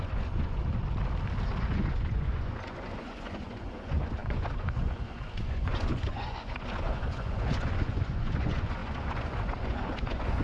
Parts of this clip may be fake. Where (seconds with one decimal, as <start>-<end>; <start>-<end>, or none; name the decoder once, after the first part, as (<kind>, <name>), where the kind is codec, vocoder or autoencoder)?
0.0-0.6 (vocoder, Vocos); 1.6-10.4